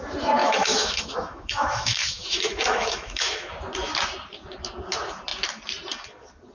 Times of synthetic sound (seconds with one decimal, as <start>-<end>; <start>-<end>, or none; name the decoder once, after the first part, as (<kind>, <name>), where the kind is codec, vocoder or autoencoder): 0.4-3.5 (autoencoder, DAC-VAE)